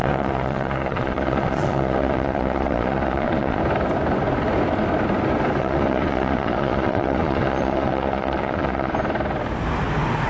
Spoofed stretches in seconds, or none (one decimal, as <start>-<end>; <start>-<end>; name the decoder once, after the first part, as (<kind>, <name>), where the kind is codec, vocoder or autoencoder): 0.0-3.6 (vocoder, Vocos); 5.6-8.9